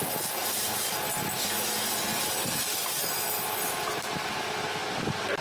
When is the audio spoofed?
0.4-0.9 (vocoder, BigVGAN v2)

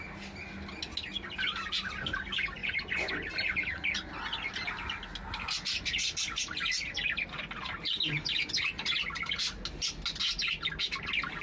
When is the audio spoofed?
2.6-3.1 (vocoder, Vocos)

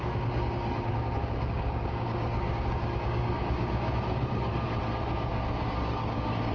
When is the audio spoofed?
0.0-4.5 (codec, DAC); 5.1-6.5

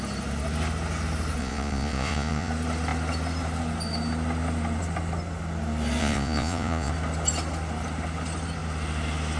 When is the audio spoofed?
1.4-2.5 (vocoder, Vocos); 6.0-6.9

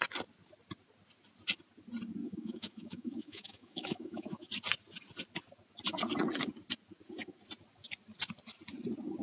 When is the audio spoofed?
2.2-4.5 (autoencoder, DAC-VAE)

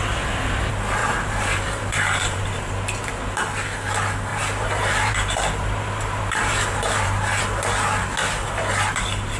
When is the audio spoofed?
1.0-2.7 (vocoder, BigVGAN v2); 4.3-7.4

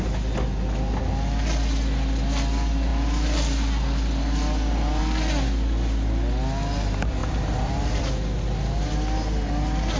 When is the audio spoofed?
none

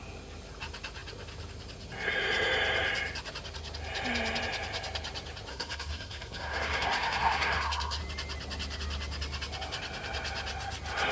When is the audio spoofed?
5.5-8.0 (codec, SNAC)